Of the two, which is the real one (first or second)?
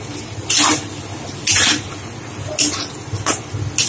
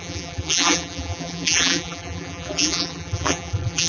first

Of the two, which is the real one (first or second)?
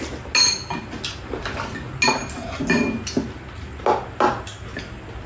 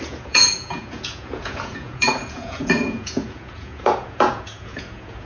first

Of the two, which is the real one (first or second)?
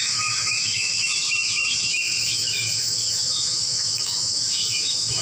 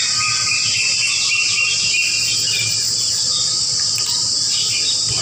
second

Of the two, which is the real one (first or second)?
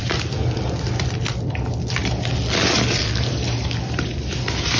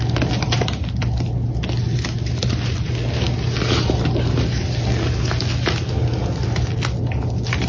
second